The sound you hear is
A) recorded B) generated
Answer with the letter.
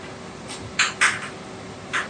A